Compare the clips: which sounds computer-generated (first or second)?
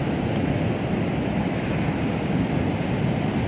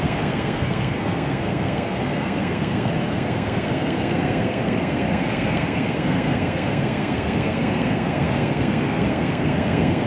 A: second